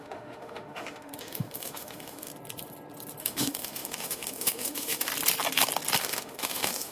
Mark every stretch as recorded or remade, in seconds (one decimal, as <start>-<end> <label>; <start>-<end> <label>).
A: 0.0-2.3 remade; 2.3-3.2 recorded; 3.2-5.1 remade; 5.1-6.0 recorded; 6.0-6.9 remade